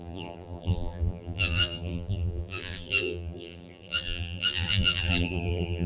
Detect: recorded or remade remade